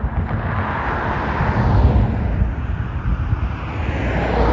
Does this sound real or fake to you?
real